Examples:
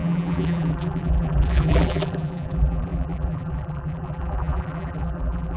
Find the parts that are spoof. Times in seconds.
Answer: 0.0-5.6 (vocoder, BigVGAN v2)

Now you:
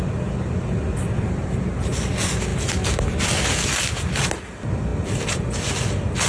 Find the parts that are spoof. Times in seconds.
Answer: none

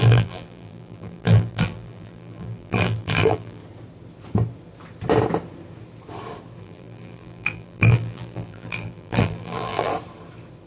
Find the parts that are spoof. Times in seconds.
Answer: 0.0-3.6 (vocoder, BigVGAN v2); 6.6-9.9